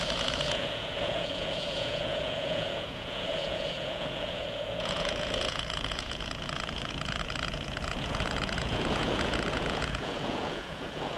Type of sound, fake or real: fake